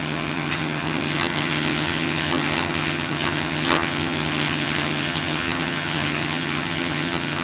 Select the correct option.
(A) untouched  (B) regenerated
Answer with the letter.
B